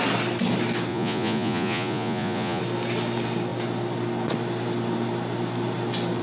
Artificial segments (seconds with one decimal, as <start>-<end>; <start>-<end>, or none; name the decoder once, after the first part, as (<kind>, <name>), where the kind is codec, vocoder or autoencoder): 0.9-2.6 (vocoder, Vocos)